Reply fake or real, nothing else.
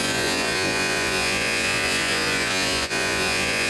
fake